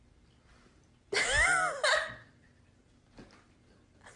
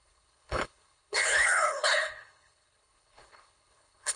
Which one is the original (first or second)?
first